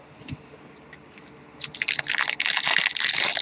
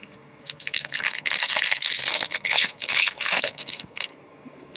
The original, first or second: first